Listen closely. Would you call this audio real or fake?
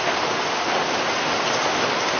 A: real